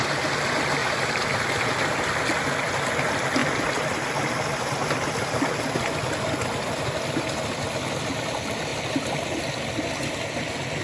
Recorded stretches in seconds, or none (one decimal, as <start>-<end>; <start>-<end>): 0.0-10.8